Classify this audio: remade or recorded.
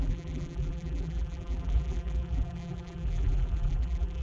remade